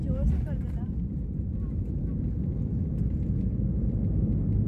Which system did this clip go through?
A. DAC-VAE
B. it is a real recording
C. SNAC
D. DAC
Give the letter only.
B